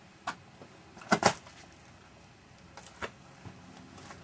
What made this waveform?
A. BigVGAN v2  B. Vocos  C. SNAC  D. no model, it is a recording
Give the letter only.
D